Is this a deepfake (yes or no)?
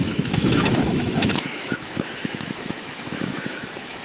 yes